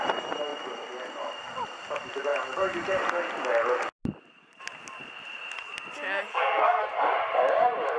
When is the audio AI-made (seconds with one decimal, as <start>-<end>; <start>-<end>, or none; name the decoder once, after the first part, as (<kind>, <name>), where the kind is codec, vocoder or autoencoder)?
6.3-6.8 (codec, SNAC)